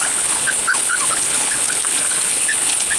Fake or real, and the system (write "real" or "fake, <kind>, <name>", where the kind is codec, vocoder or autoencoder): fake, codec, HILCodec